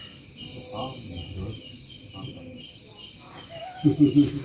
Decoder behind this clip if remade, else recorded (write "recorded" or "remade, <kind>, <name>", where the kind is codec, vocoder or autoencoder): recorded